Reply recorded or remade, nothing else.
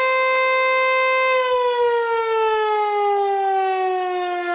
recorded